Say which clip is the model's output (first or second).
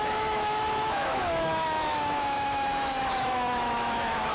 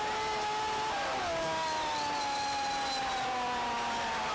first